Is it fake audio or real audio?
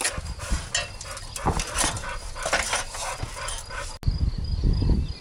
real